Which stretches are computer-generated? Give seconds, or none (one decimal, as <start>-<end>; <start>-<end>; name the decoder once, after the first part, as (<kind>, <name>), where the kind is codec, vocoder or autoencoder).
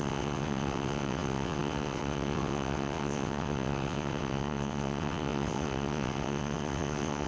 0.0-7.3 (vocoder, WaveNeXt)